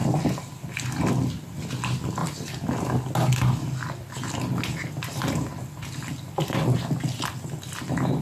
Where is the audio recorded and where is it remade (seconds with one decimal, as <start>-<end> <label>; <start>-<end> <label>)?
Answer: 0.0-8.2 recorded